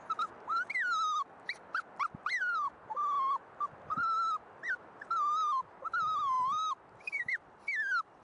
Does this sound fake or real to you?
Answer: real